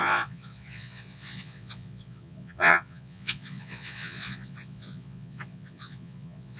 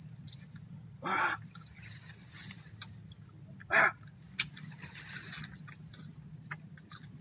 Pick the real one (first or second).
second